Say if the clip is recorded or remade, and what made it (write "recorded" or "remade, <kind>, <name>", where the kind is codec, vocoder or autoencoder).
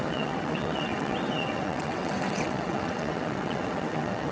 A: remade, vocoder, WaveNeXt